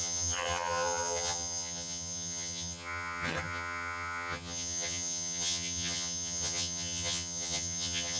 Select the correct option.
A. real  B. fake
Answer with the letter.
B